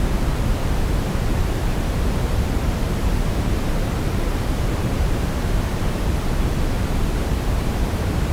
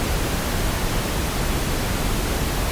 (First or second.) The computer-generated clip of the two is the first